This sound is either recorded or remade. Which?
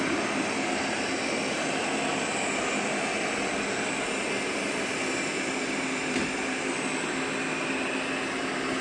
recorded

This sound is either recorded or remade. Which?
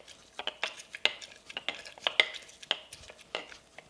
recorded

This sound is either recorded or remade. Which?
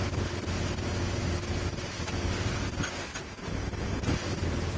recorded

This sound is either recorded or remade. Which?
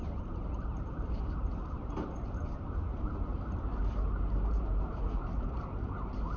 remade